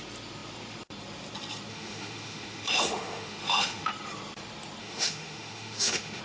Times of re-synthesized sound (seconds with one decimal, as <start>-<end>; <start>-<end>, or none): 1.7-3.9; 4.8-6.2